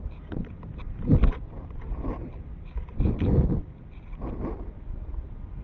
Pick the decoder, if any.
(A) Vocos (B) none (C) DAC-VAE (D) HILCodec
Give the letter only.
B